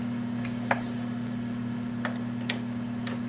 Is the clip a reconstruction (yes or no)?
no